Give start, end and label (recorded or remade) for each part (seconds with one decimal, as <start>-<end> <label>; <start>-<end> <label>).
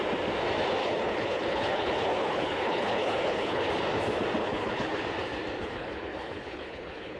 0.0-0.8 recorded; 0.8-3.7 remade; 3.7-4.4 recorded; 4.4-5.0 remade; 5.0-5.6 recorded; 5.6-7.2 remade